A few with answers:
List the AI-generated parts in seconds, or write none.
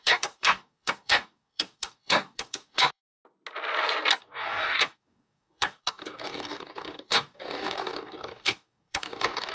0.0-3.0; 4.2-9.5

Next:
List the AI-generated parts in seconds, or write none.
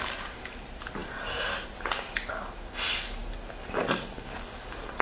none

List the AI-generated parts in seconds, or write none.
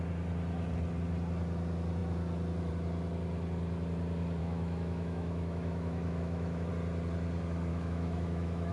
4.4-6.7; 7.7-8.7